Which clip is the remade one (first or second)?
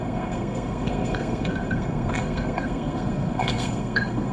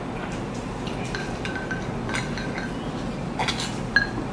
first